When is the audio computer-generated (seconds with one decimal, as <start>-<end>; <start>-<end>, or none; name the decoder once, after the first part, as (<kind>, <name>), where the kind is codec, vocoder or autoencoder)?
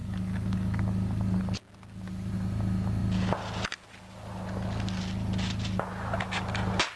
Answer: 0.0-1.4 (codec, DAC)